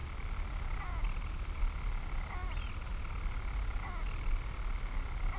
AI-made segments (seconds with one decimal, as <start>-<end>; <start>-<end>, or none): none

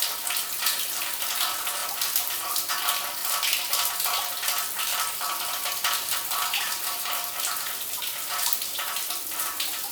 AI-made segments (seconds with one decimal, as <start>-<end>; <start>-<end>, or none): 1.8-2.7; 4.9-7.0

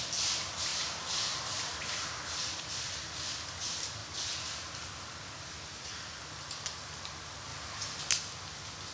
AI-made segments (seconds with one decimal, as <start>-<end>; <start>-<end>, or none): none

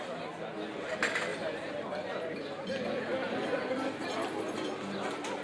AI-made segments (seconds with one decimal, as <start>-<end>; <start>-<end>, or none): none

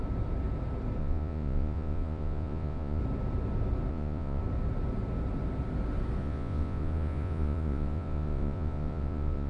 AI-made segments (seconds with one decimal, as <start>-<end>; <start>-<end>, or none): 1.0-3.0; 3.9-4.4; 6.2-9.5

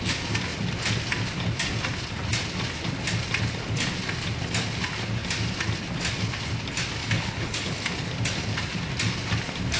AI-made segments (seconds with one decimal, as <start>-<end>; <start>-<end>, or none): 7.0-7.9

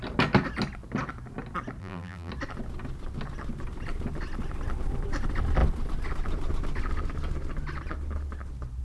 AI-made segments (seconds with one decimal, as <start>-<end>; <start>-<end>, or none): 1.8-2.3

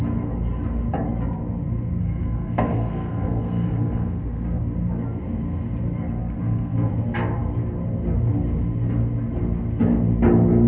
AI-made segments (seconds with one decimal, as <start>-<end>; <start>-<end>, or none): 2.0-4.6; 6.2-6.9